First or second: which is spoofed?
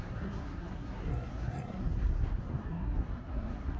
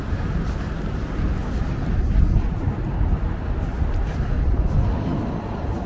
first